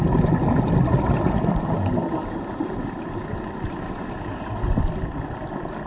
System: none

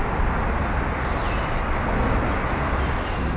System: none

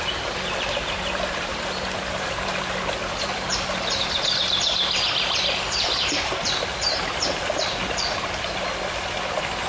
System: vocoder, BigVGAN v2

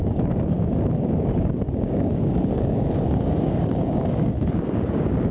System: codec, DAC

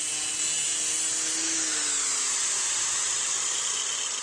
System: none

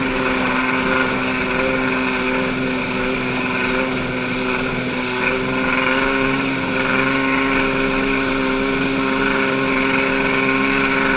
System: none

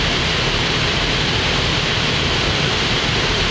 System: vocoder, BigVGAN v2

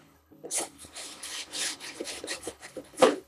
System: codec, HILCodec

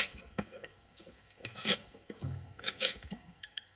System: codec, SNAC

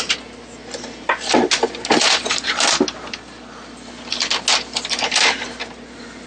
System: none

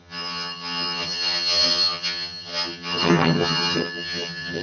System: vocoder, HiFi-GAN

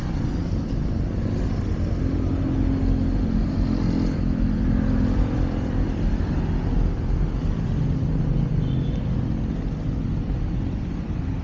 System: none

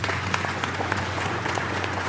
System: vocoder, Vocos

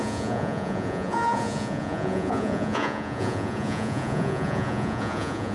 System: vocoder, Vocos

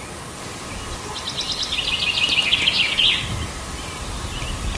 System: none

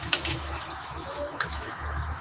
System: autoencoder, DAC-VAE